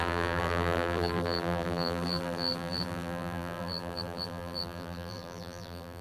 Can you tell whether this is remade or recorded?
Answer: remade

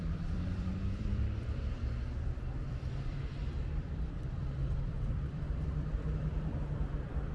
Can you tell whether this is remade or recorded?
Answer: remade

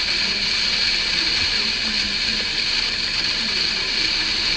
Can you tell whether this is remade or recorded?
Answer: recorded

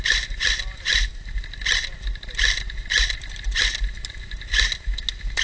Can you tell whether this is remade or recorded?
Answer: recorded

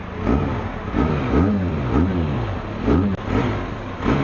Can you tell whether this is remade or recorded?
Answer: recorded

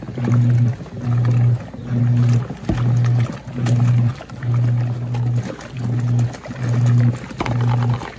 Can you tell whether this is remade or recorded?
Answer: recorded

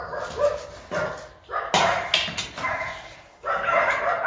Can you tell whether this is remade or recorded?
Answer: recorded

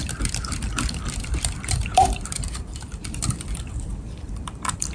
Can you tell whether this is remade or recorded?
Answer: remade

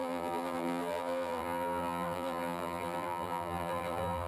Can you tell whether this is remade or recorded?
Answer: remade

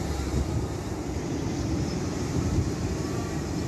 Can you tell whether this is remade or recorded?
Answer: remade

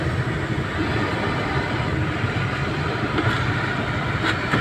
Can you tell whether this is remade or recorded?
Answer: remade